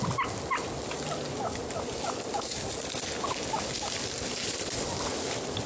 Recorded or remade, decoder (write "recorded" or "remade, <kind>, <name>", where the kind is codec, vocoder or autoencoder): recorded